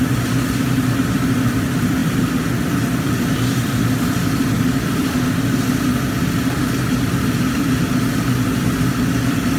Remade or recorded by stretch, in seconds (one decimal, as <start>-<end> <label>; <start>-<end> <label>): 0.0-9.6 recorded